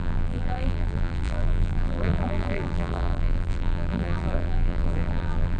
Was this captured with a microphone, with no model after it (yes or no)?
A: no